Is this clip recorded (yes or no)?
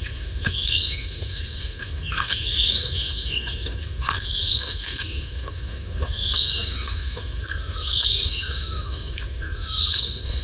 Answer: no